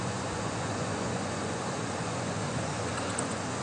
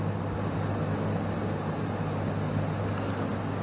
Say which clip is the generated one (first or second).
first